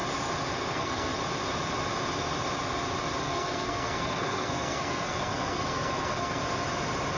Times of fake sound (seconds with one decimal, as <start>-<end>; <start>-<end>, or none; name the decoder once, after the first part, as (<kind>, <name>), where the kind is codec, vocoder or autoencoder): 0.7-1.1 (codec, SNAC); 3.2-6.4

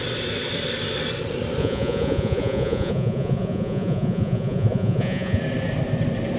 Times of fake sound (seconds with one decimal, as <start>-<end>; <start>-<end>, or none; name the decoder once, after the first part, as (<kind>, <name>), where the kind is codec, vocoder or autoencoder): 1.6-5.4 (vocoder, Vocos)

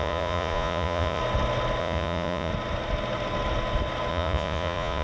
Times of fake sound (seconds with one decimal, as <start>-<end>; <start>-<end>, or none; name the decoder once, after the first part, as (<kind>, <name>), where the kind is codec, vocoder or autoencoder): 0.0-1.2 (vocoder, Vocos); 1.8-2.5; 4.1-5.0